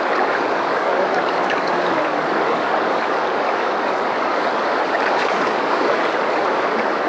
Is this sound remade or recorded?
remade